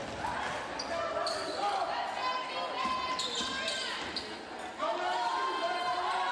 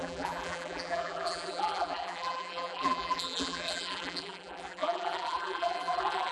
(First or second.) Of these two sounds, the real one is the first